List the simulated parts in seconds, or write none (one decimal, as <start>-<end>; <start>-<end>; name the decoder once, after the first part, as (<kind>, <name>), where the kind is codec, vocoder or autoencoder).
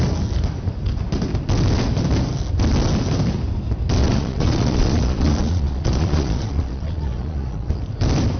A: 4.0-7.8 (vocoder, Vocos)